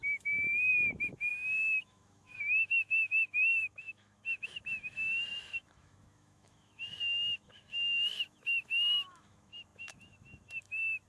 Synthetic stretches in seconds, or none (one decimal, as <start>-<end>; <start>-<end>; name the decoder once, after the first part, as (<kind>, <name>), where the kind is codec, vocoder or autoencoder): 0.0-11.1 (autoencoder, DAC-VAE)